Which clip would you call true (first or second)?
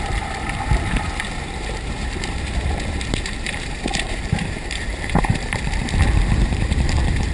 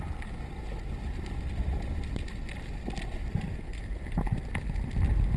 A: second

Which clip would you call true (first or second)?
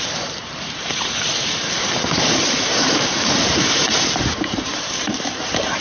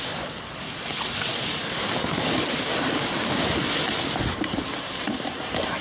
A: second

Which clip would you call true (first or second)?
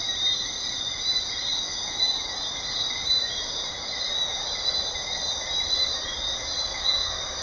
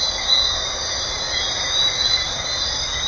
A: second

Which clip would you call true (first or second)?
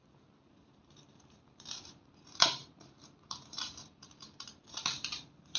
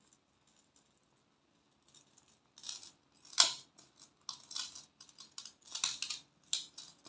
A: second